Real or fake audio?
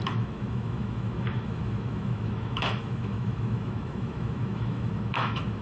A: fake